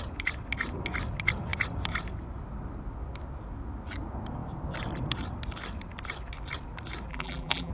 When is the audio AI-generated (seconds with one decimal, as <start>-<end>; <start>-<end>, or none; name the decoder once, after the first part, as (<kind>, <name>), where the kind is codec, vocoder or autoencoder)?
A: 7.1-7.7 (vocoder, BigVGAN v2)